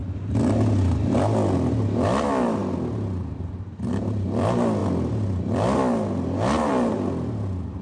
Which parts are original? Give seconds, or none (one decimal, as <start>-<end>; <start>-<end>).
0.0-7.8